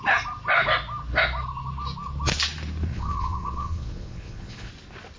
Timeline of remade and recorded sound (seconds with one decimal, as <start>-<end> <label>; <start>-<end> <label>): 0.0-2.9 recorded; 2.9-4.7 remade; 4.7-5.2 recorded